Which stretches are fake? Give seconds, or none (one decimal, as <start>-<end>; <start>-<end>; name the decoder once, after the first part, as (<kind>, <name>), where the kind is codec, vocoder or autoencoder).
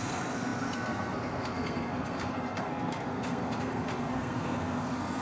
0.0-5.2 (codec, SNAC)